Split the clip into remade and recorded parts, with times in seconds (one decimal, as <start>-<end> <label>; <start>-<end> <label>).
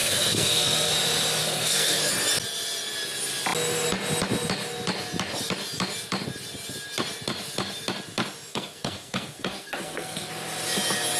0.0-0.9 remade; 0.9-1.4 recorded; 1.4-2.1 remade; 2.1-8.5 recorded; 8.5-10.3 remade; 10.3-11.2 recorded